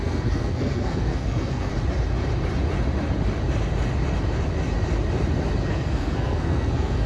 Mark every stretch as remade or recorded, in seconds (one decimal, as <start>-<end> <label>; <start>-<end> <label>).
0.0-1.7 remade; 1.7-5.7 recorded; 5.7-7.1 remade